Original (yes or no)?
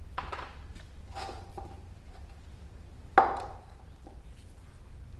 yes